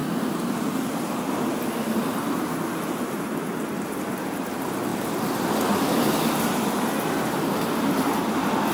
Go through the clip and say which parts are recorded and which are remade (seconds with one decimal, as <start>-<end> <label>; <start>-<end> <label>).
0.0-8.7 recorded